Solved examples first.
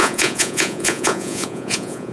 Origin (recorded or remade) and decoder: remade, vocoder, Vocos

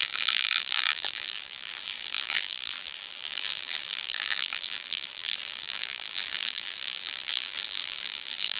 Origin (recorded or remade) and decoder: remade, vocoder, BigVGAN v2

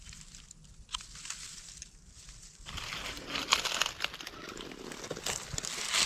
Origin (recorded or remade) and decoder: recorded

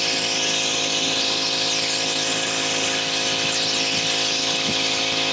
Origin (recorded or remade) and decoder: recorded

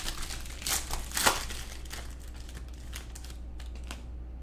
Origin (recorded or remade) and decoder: recorded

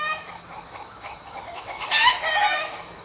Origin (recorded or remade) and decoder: remade, autoencoder, DAC-VAE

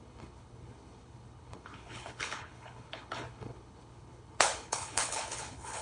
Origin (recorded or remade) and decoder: remade, codec, HILCodec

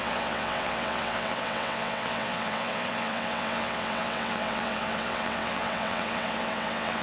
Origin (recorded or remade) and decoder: remade, vocoder, WaveNeXt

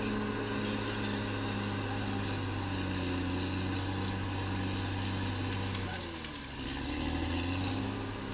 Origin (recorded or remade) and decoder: recorded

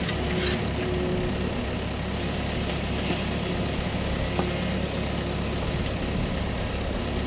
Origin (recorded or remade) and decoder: recorded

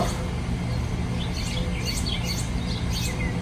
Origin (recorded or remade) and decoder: recorded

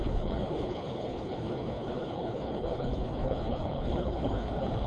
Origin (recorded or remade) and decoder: remade, codec, HILCodec